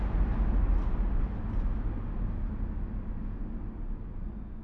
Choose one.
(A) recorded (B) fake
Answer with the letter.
A